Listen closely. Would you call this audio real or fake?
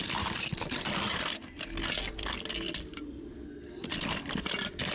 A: real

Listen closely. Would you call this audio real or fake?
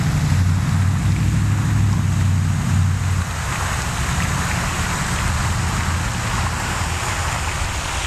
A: real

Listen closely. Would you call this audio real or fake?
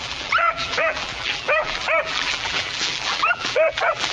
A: fake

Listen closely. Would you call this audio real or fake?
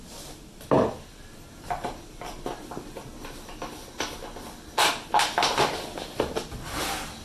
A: real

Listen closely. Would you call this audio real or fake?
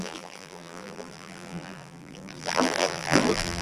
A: fake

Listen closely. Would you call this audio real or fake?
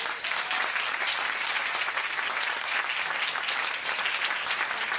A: real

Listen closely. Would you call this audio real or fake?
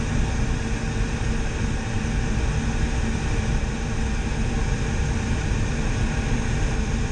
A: real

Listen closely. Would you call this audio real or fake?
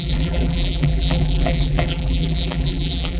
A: fake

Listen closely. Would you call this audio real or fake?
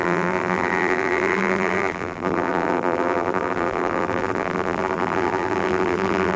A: fake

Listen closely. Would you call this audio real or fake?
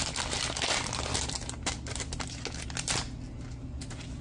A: real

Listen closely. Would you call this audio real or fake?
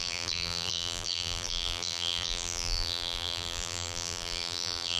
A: fake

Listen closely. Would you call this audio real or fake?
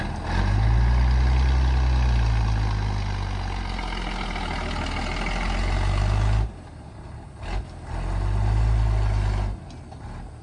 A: real